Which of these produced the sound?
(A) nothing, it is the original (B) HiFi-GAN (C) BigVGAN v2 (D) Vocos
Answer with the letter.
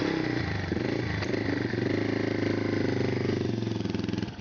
A